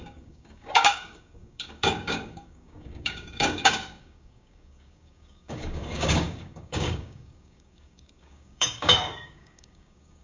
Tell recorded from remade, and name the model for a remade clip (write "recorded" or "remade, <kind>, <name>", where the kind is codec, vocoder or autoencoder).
remade, codec, DAC